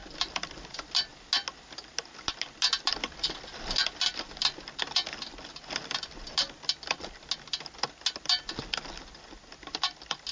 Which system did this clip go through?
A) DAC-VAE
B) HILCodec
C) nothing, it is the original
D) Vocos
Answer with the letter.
C